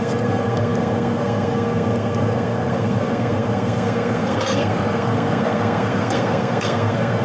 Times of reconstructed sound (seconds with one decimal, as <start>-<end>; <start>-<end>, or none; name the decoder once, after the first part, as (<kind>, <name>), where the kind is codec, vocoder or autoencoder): 0.0-7.2 (codec, SNAC)